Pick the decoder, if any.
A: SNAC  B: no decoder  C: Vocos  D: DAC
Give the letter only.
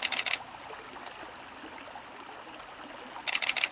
B